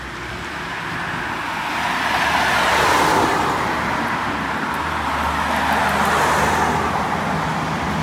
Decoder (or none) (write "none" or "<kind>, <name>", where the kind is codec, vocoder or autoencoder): none